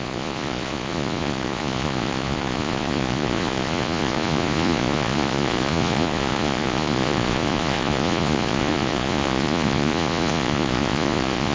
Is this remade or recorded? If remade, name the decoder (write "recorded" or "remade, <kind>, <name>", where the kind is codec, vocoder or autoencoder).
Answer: remade, vocoder, Vocos